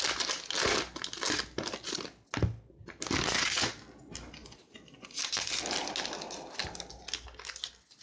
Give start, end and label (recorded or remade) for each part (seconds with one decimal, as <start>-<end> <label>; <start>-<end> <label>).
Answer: 0.0-8.0 recorded